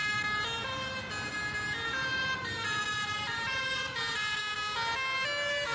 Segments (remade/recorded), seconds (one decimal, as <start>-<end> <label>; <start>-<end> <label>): 0.0-1.0 remade; 1.0-2.0 recorded; 2.0-4.4 remade; 4.4-5.7 recorded